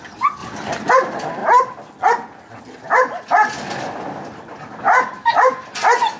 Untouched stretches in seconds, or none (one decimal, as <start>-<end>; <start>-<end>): 0.0-6.2